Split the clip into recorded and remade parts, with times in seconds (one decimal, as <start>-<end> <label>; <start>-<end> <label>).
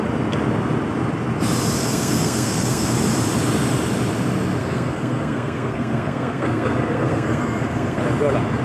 0.0-1.8 recorded; 1.8-2.9 remade; 2.9-4.6 recorded; 4.6-8.0 remade; 8.0-8.6 recorded